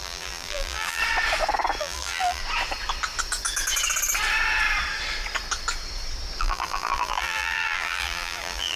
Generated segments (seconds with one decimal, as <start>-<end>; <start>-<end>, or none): 0.0-1.0; 1.8-2.4; 6.4-8.8